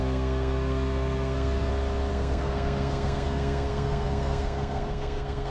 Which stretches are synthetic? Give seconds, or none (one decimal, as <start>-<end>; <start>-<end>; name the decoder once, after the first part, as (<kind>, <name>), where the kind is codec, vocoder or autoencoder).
0.0-1.7 (codec, SNAC); 2.1-5.5